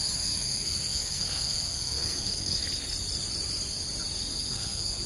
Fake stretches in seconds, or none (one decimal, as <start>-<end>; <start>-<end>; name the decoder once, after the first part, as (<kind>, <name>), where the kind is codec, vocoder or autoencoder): 0.0-2.6 (codec, SNAC); 4.3-5.1